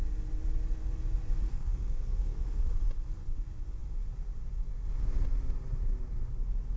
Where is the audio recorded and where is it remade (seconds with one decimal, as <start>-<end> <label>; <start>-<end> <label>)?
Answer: 0.0-1.5 recorded; 1.5-2.6 remade; 2.6-6.8 recorded